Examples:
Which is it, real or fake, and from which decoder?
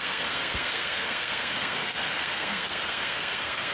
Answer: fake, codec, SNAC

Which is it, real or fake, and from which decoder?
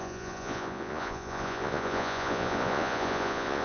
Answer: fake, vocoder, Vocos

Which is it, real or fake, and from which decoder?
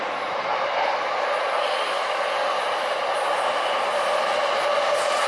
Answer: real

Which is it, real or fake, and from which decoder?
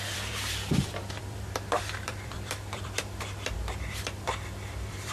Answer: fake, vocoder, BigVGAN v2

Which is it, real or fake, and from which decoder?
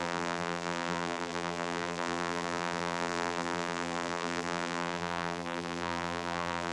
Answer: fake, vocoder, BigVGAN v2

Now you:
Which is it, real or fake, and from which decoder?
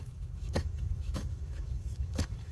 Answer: fake, autoencoder, DAC-VAE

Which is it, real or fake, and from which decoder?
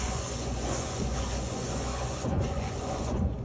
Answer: fake, vocoder, Vocos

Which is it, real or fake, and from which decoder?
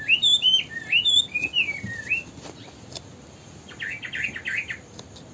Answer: real